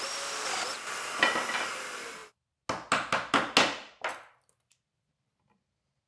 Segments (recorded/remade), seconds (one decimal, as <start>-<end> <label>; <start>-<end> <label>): 0.0-6.1 recorded